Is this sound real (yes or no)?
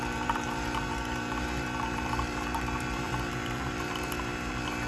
no